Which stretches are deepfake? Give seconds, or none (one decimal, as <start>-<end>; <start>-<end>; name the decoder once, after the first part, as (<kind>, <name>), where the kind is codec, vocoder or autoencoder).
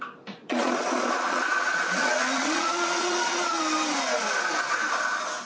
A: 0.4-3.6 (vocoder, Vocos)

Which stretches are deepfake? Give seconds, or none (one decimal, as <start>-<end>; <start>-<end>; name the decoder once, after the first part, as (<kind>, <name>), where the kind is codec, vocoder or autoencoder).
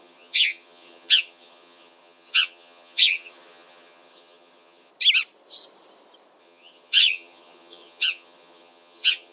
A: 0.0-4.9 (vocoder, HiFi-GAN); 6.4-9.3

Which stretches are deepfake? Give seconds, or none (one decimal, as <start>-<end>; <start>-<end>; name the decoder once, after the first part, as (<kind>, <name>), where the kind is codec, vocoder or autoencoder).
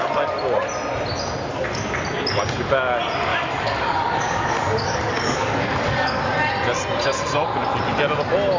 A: 3.3-6.2 (codec, DAC)